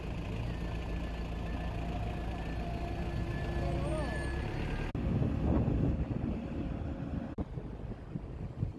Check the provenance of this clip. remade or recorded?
recorded